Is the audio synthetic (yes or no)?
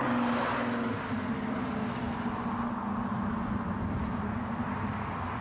no